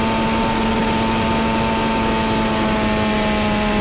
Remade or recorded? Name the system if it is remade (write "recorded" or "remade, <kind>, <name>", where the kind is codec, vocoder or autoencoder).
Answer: recorded